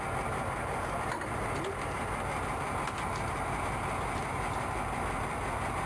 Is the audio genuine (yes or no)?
yes